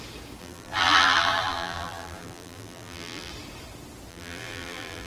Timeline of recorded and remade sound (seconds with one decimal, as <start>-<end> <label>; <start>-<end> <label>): 0.0-0.4 recorded; 0.4-3.3 remade; 3.3-4.1 recorded; 4.1-5.1 remade